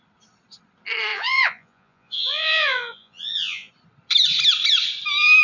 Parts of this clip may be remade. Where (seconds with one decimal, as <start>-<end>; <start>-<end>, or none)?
1.1-3.7